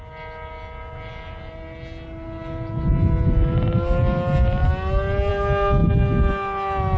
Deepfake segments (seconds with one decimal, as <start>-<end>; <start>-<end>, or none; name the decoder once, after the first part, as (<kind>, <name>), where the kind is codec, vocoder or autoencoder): none